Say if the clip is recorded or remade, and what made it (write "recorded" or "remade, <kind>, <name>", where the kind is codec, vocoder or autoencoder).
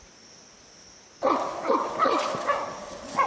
recorded